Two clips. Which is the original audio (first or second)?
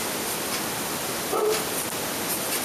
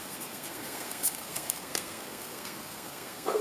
first